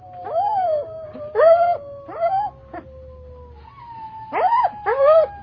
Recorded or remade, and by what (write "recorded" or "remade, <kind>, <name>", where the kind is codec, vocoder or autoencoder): recorded